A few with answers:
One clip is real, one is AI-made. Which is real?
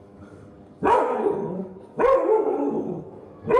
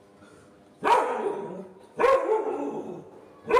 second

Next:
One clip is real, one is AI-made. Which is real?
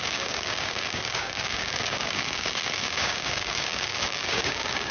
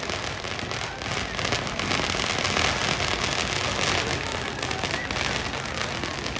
second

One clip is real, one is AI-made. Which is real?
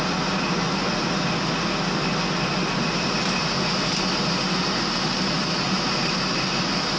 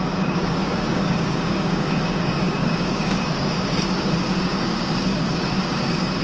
first